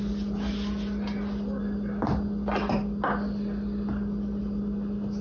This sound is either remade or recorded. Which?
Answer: recorded